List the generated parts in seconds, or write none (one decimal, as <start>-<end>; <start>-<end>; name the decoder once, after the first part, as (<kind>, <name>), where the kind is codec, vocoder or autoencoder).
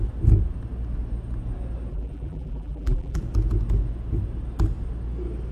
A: 1.9-3.2 (vocoder, BigVGAN v2)